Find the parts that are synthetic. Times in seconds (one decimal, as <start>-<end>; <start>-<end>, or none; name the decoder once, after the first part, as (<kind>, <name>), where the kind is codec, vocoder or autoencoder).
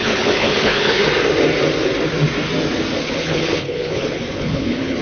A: 0.0-1.0 (codec, HILCodec); 3.0-5.0